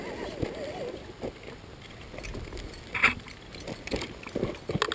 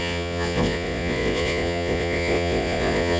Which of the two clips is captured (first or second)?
first